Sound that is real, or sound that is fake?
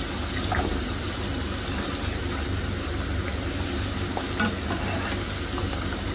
real